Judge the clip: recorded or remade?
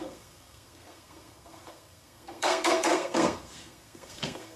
remade